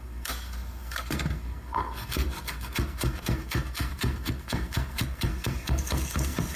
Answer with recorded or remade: remade